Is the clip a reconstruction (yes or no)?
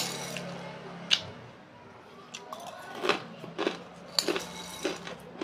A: no